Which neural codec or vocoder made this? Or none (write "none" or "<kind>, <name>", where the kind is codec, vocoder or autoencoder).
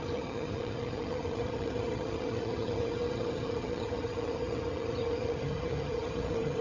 vocoder, HiFi-GAN